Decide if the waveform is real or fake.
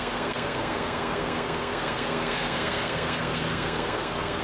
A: fake